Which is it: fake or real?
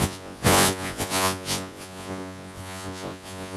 fake